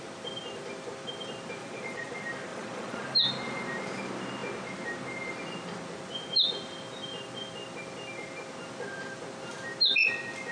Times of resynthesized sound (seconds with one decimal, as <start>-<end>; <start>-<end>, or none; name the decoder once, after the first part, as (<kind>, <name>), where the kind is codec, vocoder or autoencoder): 1.6-2.1 (vocoder, Vocos); 2.5-3.0